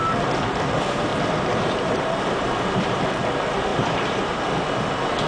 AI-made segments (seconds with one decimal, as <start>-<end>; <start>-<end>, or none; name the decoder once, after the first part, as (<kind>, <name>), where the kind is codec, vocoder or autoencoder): 1.1-3.0 (vocoder, BigVGAN v2); 3.7-4.2